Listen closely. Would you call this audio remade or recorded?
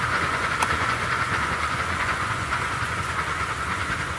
remade